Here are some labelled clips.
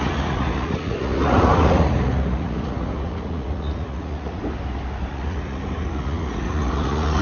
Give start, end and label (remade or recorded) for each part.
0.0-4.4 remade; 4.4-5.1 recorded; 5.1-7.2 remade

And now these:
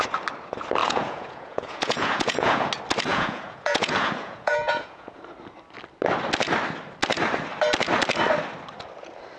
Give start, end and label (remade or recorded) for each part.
0.0-0.8 recorded; 0.8-2.7 remade; 2.7-3.1 recorded; 3.1-5.2 remade; 5.2-9.4 recorded

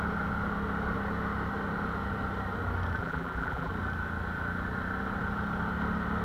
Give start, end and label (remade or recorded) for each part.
0.0-3.0 recorded; 3.0-3.7 remade; 3.7-6.2 recorded

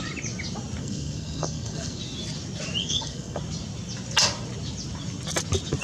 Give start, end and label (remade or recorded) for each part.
0.0-0.8 recorded; 0.8-2.0 remade; 2.0-2.8 recorded; 2.8-3.4 remade; 3.4-5.8 recorded

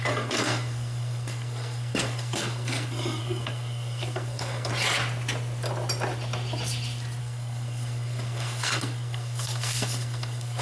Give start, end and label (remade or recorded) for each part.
0.0-4.7 remade; 4.7-7.2 recorded; 7.2-10.6 remade

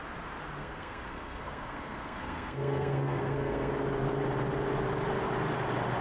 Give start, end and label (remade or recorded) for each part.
0.0-0.6 recorded; 0.6-3.7 remade; 3.7-6.0 recorded

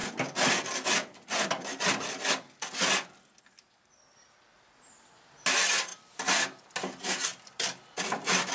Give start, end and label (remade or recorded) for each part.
0.0-3.4 remade; 3.4-7.3 recorded; 7.3-8.5 remade